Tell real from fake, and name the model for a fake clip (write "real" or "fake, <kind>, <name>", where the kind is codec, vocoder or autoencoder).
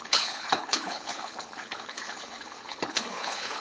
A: fake, codec, HILCodec